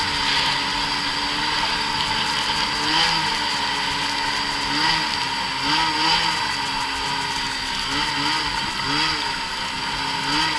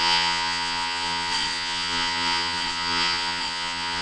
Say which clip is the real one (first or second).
first